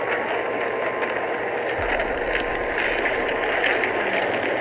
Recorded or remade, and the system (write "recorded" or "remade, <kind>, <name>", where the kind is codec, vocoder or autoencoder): recorded